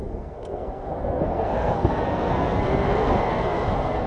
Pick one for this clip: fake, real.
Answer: fake